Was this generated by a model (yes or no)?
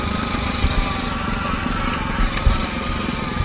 yes